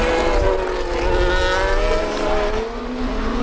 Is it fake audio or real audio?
real